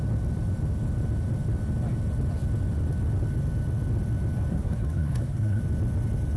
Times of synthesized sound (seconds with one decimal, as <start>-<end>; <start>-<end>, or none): 4.5-5.6